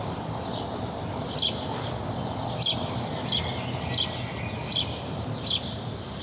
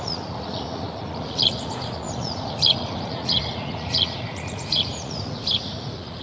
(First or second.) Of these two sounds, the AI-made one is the second